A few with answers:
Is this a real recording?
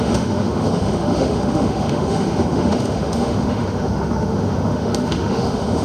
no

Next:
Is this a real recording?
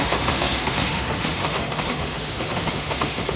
no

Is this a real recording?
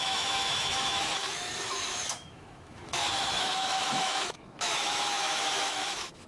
no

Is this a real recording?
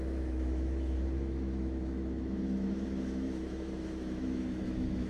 no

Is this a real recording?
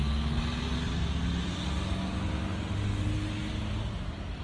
yes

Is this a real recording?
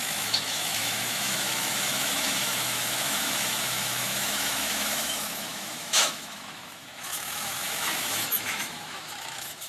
no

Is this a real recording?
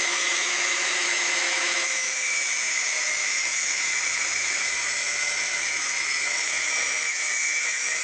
no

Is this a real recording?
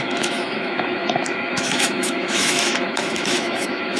no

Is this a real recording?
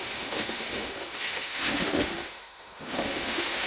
no